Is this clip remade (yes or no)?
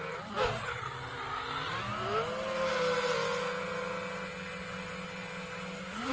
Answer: no